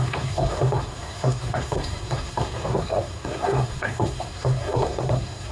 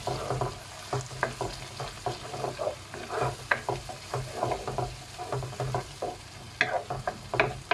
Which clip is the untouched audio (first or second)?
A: second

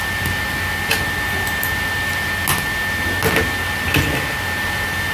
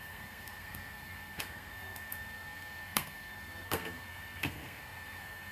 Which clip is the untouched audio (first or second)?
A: first